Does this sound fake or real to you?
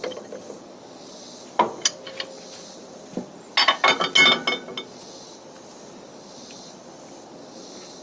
real